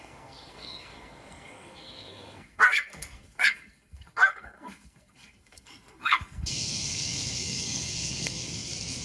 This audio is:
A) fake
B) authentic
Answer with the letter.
A